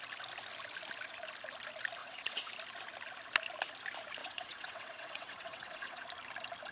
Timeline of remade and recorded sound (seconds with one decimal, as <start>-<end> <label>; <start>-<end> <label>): 0.0-2.0 recorded; 2.0-2.5 remade; 2.5-4.2 recorded; 4.2-6.0 remade; 6.0-6.7 recorded